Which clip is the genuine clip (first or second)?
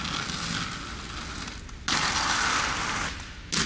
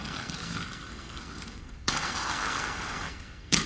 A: first